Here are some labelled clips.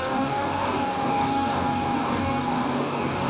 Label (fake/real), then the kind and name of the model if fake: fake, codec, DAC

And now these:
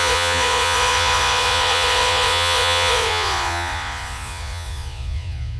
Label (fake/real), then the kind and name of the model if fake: fake, vocoder, Vocos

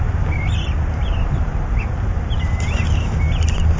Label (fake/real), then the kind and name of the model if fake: real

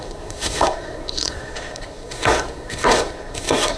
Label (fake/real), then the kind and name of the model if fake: fake, codec, SNAC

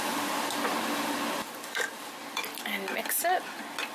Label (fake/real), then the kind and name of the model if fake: real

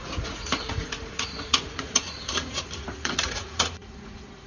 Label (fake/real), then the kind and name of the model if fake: fake, vocoder, Vocos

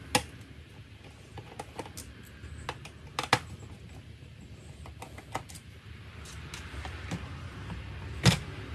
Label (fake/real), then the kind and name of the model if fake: real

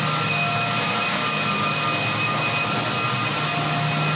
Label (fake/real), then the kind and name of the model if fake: real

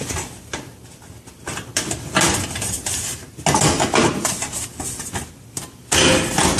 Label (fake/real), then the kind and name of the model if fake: real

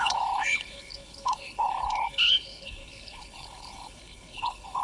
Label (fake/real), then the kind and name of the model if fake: fake, codec, HILCodec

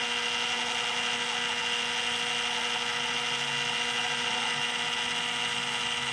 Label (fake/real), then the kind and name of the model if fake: real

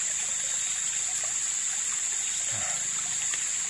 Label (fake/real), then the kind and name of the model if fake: real